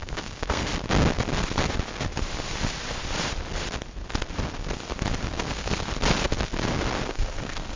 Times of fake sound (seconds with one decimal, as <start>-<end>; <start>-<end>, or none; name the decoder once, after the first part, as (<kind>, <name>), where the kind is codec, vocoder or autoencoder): 0.0-0.7 (codec, SNAC); 5.4-5.9; 7.0-7.8